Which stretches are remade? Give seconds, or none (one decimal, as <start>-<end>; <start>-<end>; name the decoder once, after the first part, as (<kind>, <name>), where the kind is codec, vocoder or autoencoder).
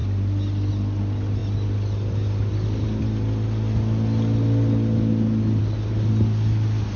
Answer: none